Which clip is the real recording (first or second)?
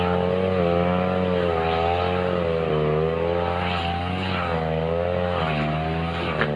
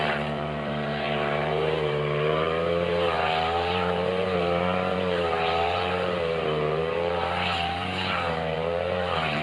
first